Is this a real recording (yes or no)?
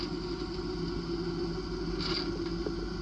yes